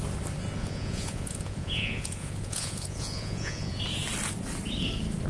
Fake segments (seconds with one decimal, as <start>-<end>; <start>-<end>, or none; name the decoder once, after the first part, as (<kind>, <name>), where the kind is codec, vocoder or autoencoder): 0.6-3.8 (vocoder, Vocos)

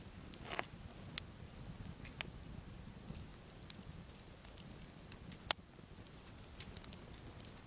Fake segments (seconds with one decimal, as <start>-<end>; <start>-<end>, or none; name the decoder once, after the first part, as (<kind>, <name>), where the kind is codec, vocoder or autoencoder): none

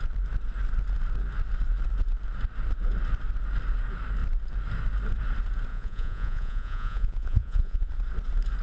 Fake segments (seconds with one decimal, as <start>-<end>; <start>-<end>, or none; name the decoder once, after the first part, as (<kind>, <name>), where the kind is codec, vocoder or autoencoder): 5.7-7.9 (vocoder, Vocos)

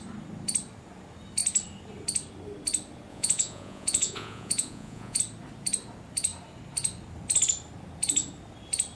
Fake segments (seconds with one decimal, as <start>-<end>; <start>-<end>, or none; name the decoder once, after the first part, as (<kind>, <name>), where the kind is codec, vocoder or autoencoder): 3.1-5.2 (vocoder, Vocos)

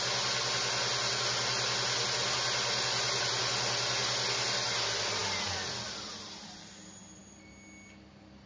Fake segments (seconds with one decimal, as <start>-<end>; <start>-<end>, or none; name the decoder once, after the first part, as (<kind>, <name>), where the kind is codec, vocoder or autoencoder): none

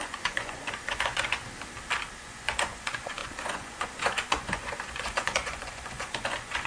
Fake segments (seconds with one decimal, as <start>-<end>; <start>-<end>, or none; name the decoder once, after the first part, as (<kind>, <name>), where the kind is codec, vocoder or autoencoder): 0.0-1.4 (vocoder, Vocos); 2.2-6.7